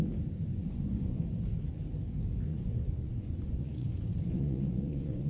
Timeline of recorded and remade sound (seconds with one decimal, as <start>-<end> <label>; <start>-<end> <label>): 0.0-0.5 recorded; 0.5-1.2 remade; 1.2-2.5 recorded; 2.5-3.9 remade; 3.9-4.3 recorded; 4.3-5.3 remade